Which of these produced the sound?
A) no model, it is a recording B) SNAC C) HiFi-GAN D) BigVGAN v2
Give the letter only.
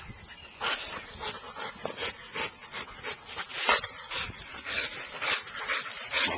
A